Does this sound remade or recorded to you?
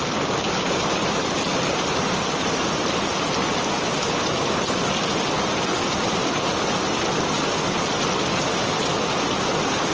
remade